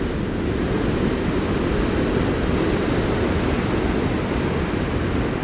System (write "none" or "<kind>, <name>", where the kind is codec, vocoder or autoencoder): none